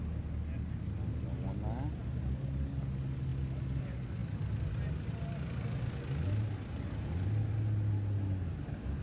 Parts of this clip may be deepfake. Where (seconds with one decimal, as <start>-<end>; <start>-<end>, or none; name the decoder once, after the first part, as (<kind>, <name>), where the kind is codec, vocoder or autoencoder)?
none